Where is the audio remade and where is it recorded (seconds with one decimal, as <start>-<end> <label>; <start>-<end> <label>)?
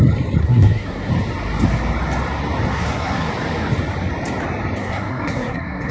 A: 0.0-0.4 recorded; 0.4-1.1 remade; 1.1-2.7 recorded; 2.7-3.3 remade; 3.3-4.8 recorded; 4.8-5.9 remade